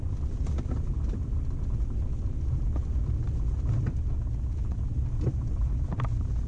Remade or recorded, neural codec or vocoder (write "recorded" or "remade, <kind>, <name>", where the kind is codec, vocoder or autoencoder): recorded